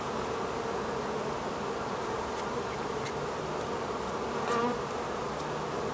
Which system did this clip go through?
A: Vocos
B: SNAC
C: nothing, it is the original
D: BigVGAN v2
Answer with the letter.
C